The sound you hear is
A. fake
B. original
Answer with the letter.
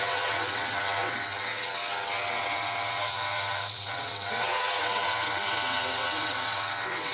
A